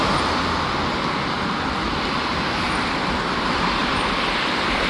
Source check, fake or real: real